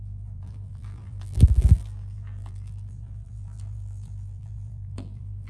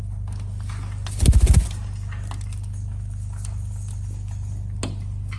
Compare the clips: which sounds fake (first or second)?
first